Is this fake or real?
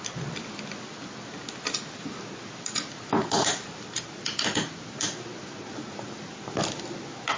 real